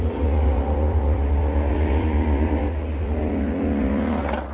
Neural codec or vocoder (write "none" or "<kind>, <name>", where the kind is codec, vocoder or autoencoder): vocoder, Vocos